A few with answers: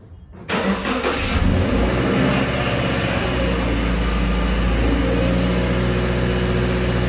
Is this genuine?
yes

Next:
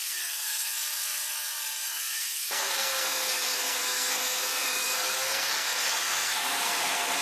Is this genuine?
no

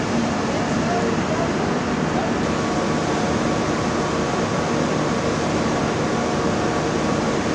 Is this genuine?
yes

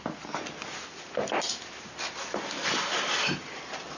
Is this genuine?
yes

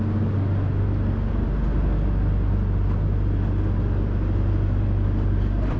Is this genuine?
yes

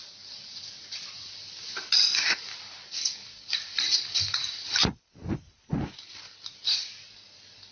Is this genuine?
yes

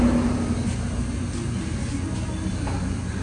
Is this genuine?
yes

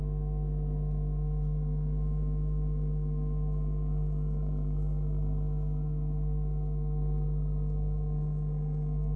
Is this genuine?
no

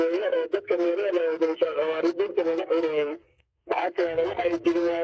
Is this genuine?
no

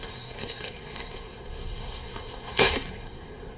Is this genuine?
no